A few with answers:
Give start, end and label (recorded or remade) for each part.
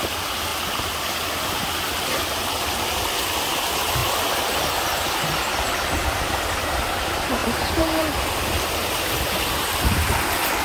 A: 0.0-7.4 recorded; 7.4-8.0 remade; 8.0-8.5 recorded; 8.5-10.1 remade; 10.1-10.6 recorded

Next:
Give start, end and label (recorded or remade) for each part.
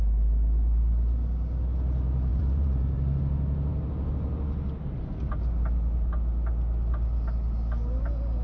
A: 0.0-2.3 recorded; 2.3-3.2 remade; 3.2-8.4 recorded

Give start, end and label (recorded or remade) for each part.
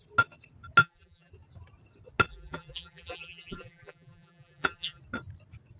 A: 0.0-0.8 recorded; 0.8-1.3 remade; 1.3-2.3 recorded; 2.3-5.0 remade; 5.0-5.8 recorded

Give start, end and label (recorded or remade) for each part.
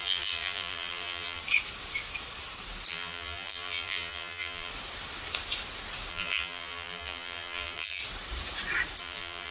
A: 0.0-1.4 remade; 1.4-2.9 recorded; 2.9-4.7 remade; 4.7-6.1 recorded; 6.1-8.0 remade; 8.0-9.0 recorded; 9.0-9.5 remade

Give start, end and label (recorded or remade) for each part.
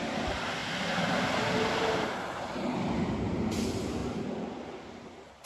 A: 0.0-4.0 recorded; 4.0-5.5 remade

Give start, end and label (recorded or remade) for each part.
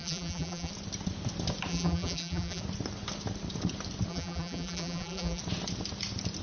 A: 0.0-0.7 remade; 0.7-1.7 recorded; 1.7-2.6 remade; 2.6-4.1 recorded; 4.1-5.4 remade; 5.4-6.4 recorded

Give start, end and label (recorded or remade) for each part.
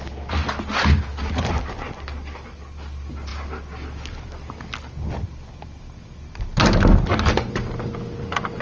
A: 0.0-8.6 recorded